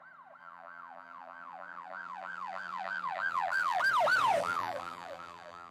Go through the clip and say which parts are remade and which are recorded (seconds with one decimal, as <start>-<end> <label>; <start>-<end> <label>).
0.0-0.4 recorded; 0.4-3.8 remade; 3.8-4.4 recorded; 4.4-5.7 remade